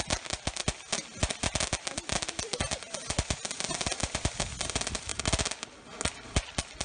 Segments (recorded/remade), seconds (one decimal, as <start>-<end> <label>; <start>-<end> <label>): 0.0-6.8 recorded